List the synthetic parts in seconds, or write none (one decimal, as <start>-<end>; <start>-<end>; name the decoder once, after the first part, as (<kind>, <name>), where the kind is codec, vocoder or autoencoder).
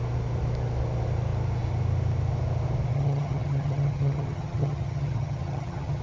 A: 2.9-6.0 (vocoder, HiFi-GAN)